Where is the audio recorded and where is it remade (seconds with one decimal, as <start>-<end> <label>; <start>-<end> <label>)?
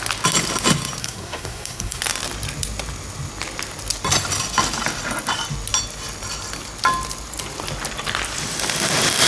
0.0-1.0 recorded; 1.0-2.0 remade; 2.0-9.3 recorded